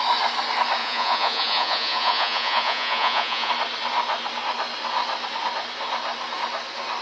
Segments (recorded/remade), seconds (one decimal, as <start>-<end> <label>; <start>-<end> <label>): 0.0-0.8 recorded; 0.8-3.5 remade; 3.5-7.0 recorded